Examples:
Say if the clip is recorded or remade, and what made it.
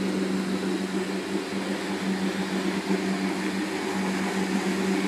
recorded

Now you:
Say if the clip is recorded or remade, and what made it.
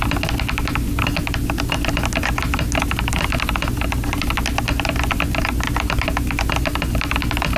recorded